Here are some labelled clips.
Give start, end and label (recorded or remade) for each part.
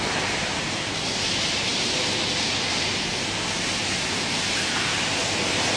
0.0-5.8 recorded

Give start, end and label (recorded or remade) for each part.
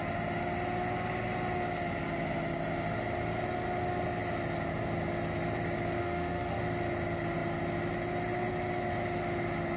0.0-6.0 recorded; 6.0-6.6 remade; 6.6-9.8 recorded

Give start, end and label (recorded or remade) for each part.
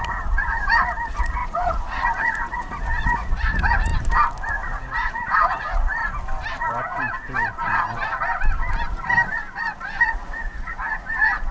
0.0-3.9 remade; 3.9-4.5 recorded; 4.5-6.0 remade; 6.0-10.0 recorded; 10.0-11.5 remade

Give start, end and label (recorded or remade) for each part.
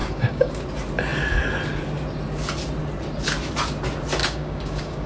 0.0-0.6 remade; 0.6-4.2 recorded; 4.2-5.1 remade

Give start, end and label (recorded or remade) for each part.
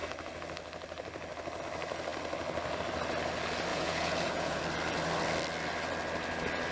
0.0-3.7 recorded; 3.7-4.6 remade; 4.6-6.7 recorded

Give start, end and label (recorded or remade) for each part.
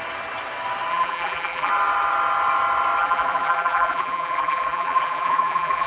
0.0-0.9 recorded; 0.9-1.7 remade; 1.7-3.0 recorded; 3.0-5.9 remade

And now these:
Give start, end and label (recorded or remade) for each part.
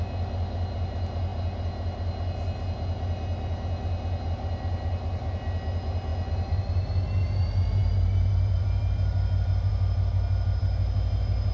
0.0-11.5 recorded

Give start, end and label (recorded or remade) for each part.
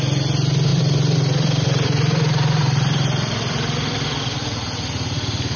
0.0-0.7 recorded; 0.7-4.1 remade; 4.1-5.6 recorded